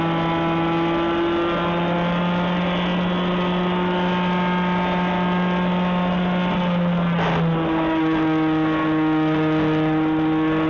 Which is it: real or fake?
real